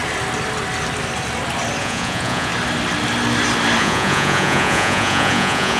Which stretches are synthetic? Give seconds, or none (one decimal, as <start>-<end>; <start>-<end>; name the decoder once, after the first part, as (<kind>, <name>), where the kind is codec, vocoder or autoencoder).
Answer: 1.8-2.5 (vocoder, Vocos); 3.8-5.8